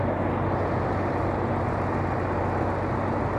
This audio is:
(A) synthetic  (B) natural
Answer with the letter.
B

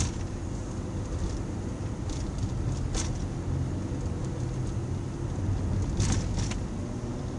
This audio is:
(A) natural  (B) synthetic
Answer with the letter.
A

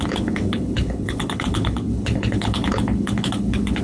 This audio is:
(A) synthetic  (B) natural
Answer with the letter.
A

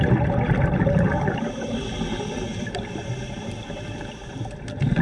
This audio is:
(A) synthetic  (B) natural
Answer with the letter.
B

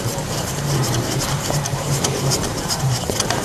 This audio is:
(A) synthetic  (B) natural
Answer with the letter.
A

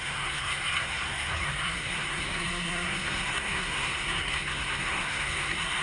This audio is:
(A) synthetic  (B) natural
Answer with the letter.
A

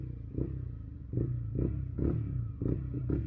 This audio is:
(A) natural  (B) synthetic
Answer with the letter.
A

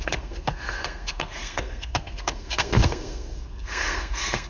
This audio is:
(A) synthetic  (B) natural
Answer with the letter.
A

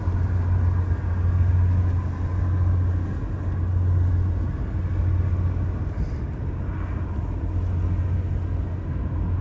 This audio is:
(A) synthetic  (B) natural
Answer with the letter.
B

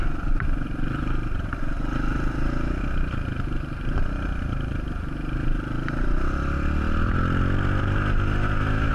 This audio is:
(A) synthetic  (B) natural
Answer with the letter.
A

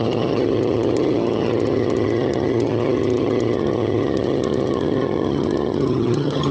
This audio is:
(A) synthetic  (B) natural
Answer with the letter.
A